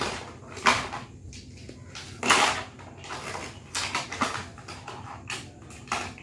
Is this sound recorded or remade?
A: recorded